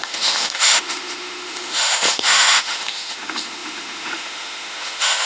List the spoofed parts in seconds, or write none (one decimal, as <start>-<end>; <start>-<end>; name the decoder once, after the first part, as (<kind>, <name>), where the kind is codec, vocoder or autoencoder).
0.0-5.3 (autoencoder, DAC-VAE)